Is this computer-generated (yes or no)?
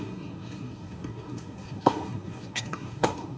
yes